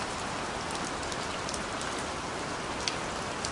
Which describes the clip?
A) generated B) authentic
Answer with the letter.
B